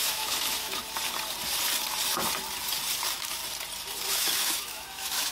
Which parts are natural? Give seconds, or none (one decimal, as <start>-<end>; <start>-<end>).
0.8-3.0; 3.4-4.1